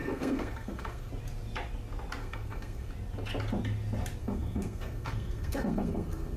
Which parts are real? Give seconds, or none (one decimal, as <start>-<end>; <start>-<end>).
1.1-2.2; 2.9-4.2